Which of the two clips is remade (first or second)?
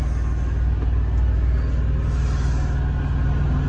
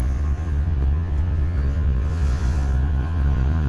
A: second